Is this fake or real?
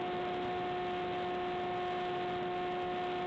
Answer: real